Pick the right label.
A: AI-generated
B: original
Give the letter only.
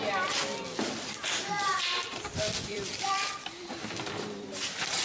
A